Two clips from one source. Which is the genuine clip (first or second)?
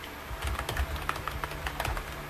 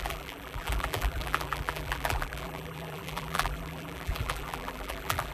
first